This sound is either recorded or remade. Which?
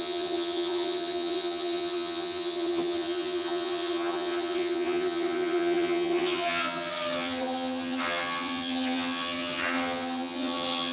remade